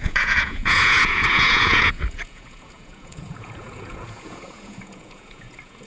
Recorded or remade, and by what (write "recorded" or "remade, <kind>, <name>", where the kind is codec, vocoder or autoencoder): remade, vocoder, Vocos